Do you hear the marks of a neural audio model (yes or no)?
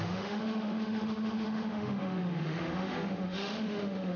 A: yes